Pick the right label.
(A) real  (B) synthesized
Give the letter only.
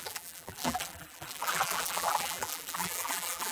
B